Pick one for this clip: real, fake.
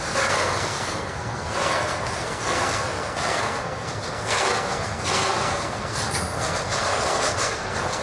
fake